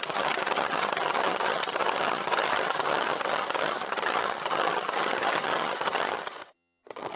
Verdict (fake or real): fake